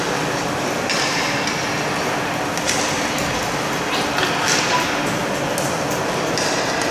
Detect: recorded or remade recorded